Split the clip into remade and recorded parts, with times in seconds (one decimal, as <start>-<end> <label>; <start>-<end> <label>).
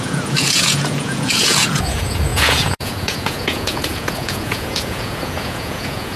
0.0-6.2 remade